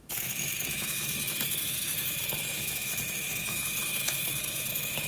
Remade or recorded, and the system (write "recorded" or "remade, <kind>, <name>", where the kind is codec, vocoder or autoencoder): remade, autoencoder, DAC-VAE